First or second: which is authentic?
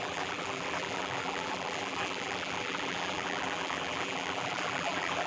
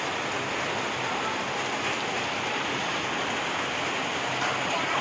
second